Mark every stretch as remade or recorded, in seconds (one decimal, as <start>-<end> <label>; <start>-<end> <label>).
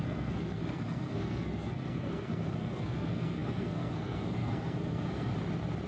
0.0-5.3 remade; 5.3-5.9 recorded